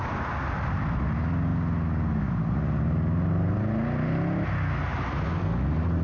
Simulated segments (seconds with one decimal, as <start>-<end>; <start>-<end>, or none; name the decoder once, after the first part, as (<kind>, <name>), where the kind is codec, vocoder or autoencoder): none